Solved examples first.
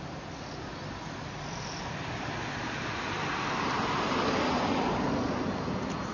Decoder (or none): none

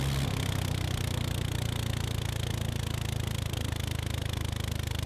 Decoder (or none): none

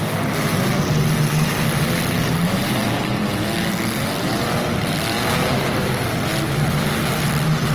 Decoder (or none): none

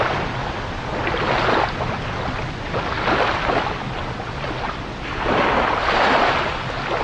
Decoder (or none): none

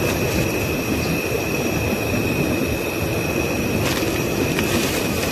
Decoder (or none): none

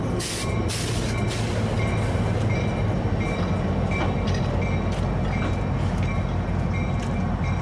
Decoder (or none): none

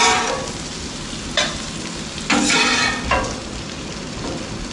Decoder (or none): none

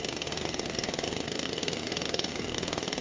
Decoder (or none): codec, SNAC